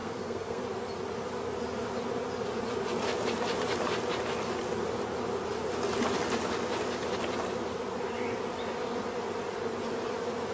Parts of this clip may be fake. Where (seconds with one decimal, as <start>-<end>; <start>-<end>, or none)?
0.0-0.6